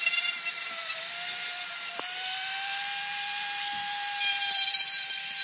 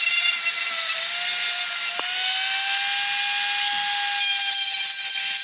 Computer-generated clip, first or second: first